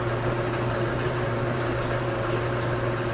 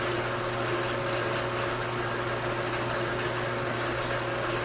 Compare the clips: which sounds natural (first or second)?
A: second